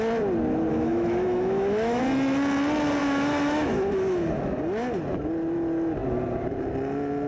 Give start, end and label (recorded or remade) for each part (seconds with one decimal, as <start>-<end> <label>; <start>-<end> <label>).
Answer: 0.0-0.7 recorded; 0.7-2.0 remade; 2.0-3.0 recorded; 3.0-4.3 remade; 4.3-7.3 recorded